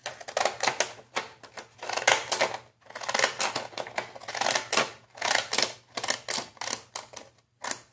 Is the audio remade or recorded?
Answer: recorded